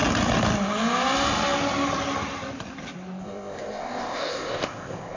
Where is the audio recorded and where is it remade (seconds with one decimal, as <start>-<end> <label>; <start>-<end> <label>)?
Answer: 0.0-3.2 recorded; 3.2-5.2 remade